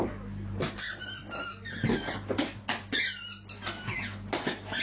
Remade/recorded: recorded